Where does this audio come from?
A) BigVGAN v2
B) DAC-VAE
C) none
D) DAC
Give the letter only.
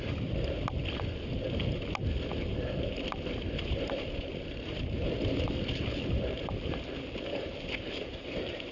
C